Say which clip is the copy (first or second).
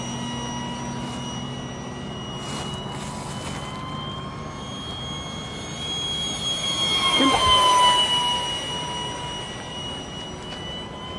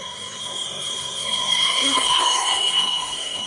second